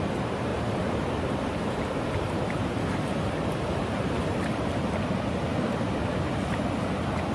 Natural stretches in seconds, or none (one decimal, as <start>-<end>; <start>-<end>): 0.0-0.5; 4.9-5.5; 6.2-7.3